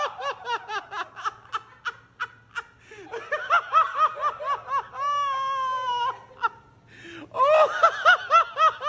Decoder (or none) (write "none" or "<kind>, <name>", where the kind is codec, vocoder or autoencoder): none